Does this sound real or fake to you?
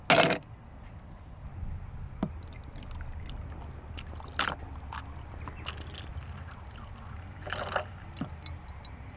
real